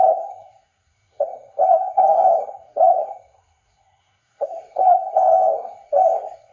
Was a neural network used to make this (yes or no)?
yes